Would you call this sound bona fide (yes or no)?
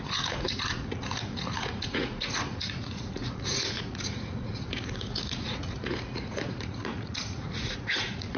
no